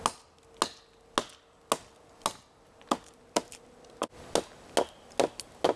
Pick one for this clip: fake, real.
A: real